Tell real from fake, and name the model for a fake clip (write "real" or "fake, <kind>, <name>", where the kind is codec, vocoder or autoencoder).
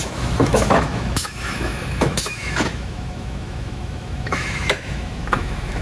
fake, autoencoder, DAC-VAE